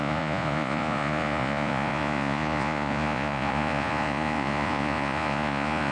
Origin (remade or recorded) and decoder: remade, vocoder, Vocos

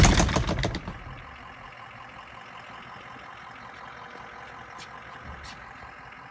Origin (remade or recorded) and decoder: recorded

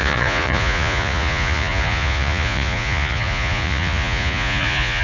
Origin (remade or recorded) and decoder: remade, vocoder, Vocos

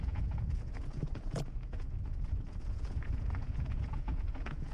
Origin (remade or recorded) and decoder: remade, vocoder, Vocos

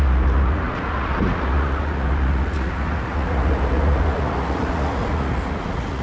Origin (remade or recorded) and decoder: remade, vocoder, Vocos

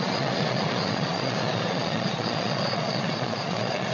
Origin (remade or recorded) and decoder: remade, vocoder, Vocos